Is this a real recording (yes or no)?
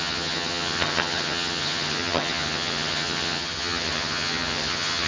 no